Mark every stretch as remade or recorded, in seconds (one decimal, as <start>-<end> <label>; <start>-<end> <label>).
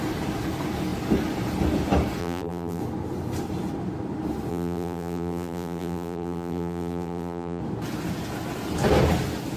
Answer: 0.0-2.2 recorded; 2.2-2.8 remade; 2.8-4.5 recorded; 4.5-7.6 remade; 7.6-9.6 recorded